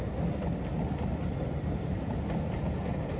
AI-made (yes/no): no